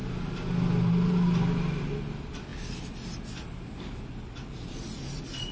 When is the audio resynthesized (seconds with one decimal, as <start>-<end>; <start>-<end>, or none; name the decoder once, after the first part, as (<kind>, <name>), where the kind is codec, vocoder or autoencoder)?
none